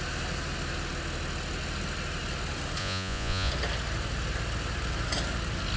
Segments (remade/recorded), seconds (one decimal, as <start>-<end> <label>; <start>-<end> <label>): 0.0-2.8 recorded; 2.8-3.5 remade; 3.5-5.8 recorded